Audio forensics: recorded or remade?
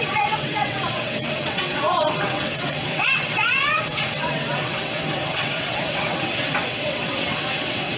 remade